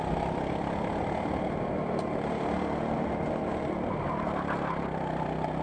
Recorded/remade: recorded